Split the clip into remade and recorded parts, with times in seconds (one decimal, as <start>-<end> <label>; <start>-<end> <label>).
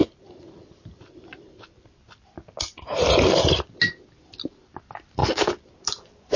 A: 0.0-6.4 recorded